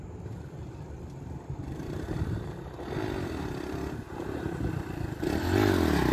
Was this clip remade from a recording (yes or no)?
no